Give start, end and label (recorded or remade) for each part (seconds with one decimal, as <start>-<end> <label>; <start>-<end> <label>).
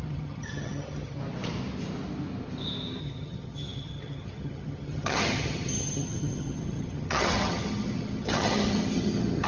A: 0.0-1.2 remade; 1.2-3.0 recorded; 3.0-9.5 remade